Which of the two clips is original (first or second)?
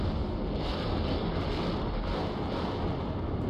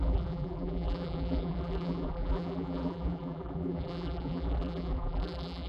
first